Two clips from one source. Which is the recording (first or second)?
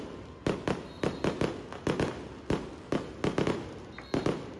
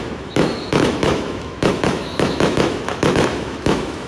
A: first